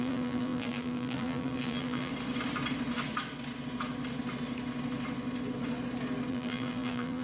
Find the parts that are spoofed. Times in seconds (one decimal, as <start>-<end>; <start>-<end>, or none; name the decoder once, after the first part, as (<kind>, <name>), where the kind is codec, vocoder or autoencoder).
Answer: 0.0-2.1 (vocoder, BigVGAN v2); 6.3-7.2